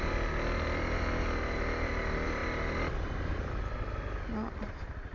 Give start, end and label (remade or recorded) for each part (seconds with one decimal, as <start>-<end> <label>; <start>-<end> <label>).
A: 0.0-5.1 recorded